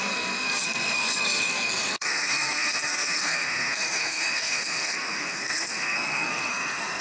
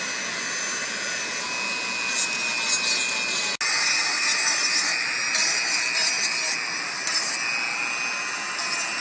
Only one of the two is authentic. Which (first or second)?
second